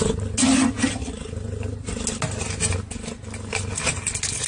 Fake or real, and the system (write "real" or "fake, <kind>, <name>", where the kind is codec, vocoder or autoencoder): real